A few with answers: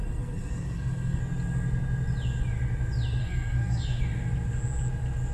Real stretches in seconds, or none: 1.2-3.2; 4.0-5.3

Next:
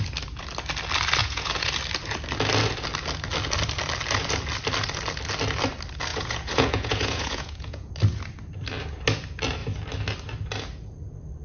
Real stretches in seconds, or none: 0.0-1.2; 1.7-6.1; 7.9-11.4